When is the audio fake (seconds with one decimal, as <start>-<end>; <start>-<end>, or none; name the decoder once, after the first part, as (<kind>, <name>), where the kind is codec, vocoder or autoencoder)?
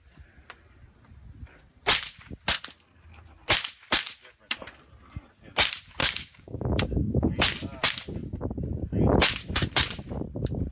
6.0-7.3 (codec, DAC)